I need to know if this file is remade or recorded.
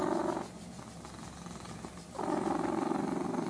recorded